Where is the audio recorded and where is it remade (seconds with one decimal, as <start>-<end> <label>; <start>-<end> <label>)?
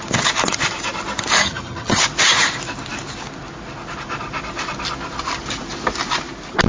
0.0-1.4 recorded; 1.4-2.0 remade; 2.0-6.7 recorded